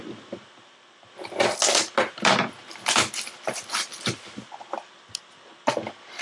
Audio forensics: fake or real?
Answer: real